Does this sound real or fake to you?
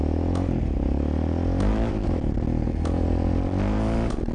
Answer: real